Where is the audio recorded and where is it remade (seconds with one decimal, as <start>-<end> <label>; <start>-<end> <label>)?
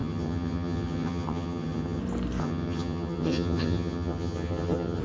0.0-2.0 remade; 2.0-2.4 recorded; 2.4-5.0 remade